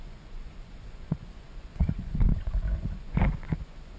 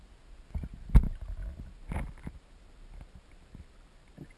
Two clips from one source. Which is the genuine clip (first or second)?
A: second